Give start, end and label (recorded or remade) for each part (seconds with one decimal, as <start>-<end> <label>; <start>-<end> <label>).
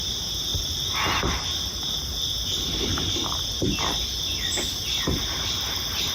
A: 0.0-6.1 recorded